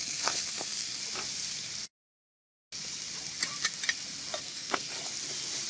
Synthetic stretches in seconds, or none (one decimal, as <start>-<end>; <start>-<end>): 0.0-1.0; 4.4-4.9